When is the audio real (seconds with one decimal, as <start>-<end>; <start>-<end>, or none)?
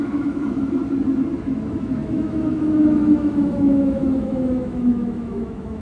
0.8-1.4